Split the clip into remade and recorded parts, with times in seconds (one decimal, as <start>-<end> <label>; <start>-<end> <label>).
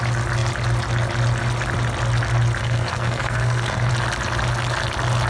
0.0-2.6 recorded; 2.6-3.9 remade; 3.9-5.3 recorded